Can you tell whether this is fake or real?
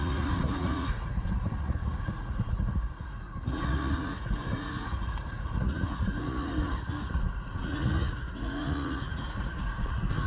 fake